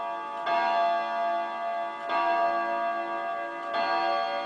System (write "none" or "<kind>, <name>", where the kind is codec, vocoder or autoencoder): none